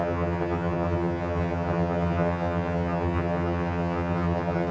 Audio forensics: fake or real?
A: fake